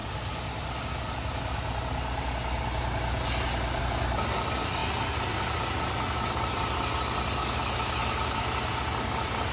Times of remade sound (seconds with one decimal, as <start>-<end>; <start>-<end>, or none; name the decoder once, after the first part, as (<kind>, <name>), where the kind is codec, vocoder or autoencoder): 7.4-8.1 (autoencoder, DAC-VAE)